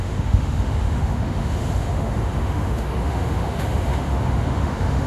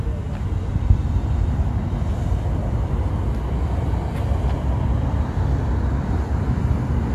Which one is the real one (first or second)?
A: second